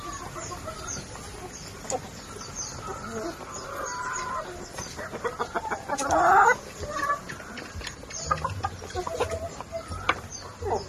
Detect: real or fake real